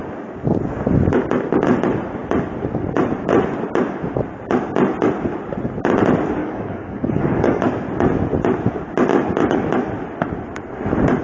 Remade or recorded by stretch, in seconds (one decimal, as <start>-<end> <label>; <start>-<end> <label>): 0.0-6.4 recorded; 6.4-7.6 remade; 7.6-11.2 recorded